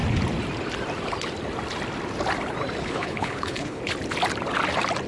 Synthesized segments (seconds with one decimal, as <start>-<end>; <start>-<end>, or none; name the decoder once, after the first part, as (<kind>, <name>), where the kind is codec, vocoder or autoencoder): 2.8-3.8 (codec, HILCodec)